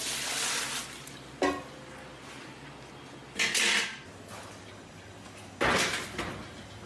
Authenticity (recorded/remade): recorded